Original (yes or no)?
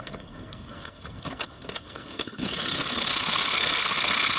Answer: no